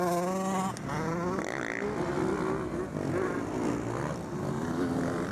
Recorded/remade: recorded